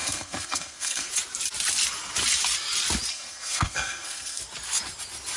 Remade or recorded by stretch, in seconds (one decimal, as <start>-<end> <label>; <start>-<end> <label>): 0.0-1.1 remade; 1.1-3.1 recorded; 3.1-4.4 remade; 4.4-5.4 recorded